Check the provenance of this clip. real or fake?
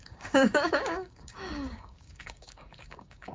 fake